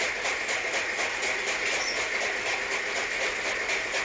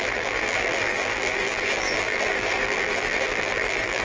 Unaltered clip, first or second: first